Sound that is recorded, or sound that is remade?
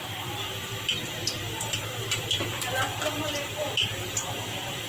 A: remade